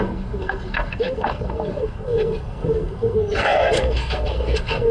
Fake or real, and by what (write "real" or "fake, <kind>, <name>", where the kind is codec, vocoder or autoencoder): fake, codec, SNAC